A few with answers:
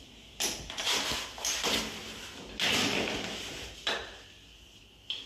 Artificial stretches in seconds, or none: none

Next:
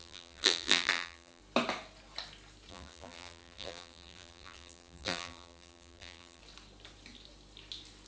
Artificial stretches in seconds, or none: 0.0-1.4 (vocoder, BigVGAN v2); 2.7-6.4